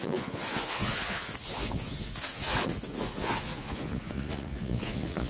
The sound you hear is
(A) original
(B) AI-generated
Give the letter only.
B